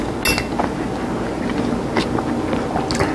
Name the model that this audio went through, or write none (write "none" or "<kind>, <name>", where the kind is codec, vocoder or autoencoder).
none